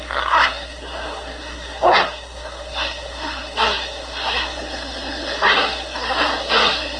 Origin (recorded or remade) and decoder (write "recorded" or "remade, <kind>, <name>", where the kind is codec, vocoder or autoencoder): remade, codec, SNAC